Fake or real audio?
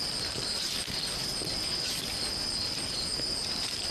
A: fake